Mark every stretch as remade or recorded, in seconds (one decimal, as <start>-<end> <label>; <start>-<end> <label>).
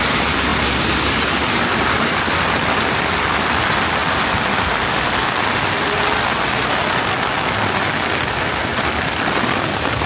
0.0-10.1 recorded